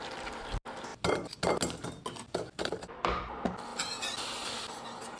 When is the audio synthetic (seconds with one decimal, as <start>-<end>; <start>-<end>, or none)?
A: none